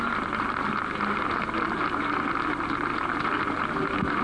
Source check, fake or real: real